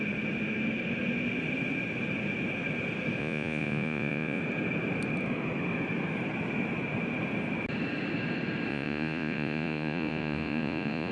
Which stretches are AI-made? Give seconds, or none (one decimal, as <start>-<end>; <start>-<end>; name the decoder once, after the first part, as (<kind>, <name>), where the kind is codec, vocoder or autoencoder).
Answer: 3.2-4.4 (vocoder, Vocos); 8.7-11.1